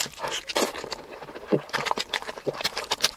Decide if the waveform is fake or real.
real